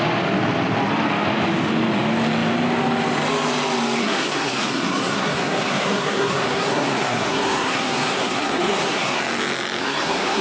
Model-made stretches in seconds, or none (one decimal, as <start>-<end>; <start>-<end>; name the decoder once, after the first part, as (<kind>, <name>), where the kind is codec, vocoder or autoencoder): 4.0-9.2 (codec, SNAC); 9.8-10.4